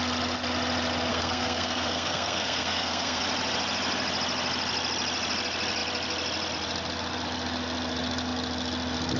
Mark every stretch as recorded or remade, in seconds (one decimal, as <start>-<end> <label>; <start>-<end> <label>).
0.0-1.1 recorded; 1.1-3.2 remade; 3.2-9.2 recorded